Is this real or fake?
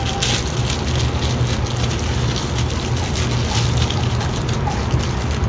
real